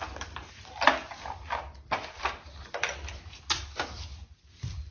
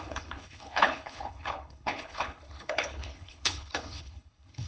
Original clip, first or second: first